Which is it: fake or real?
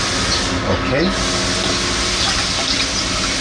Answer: real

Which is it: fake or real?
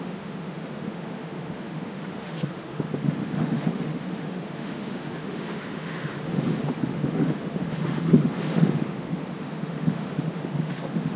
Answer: fake